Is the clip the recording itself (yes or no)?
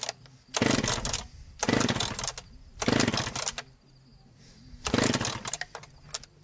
yes